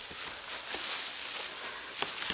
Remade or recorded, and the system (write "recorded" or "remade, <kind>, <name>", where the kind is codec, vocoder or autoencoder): recorded